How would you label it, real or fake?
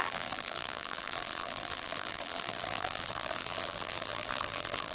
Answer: fake